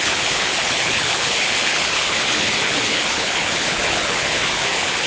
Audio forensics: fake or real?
fake